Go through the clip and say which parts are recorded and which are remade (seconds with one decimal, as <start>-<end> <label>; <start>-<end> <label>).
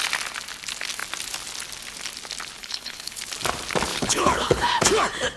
0.0-2.6 recorded; 2.6-3.2 remade; 3.2-3.9 recorded; 3.9-4.6 remade; 4.6-5.4 recorded